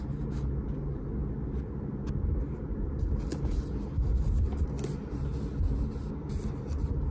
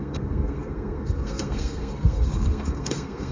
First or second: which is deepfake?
second